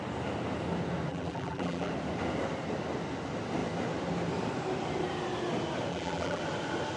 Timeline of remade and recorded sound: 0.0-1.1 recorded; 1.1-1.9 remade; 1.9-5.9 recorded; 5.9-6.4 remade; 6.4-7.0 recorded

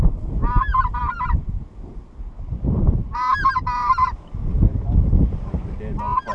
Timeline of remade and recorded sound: 0.0-2.5 recorded; 2.5-5.6 remade; 5.6-6.3 recorded

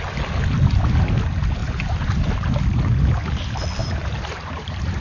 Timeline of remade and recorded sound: 0.0-1.6 recorded; 1.6-2.3 remade; 2.3-3.8 recorded; 3.8-5.0 remade

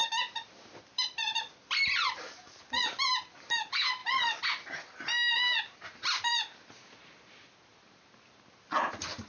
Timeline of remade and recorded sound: 0.0-2.5 remade; 2.5-4.0 recorded; 4.0-4.9 remade; 4.9-9.3 recorded

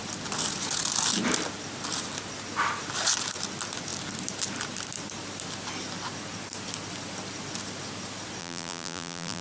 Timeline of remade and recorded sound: 0.0-8.4 recorded; 8.4-9.4 remade

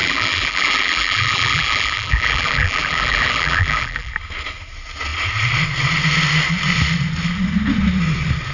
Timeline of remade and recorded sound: 0.0-4.1 remade; 4.1-8.5 recorded

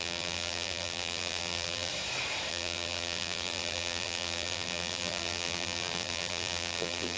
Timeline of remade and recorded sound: 0.0-1.9 remade; 1.9-2.5 recorded; 2.5-7.2 remade